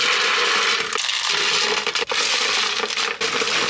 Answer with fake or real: real